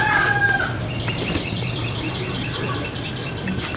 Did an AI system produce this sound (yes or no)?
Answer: no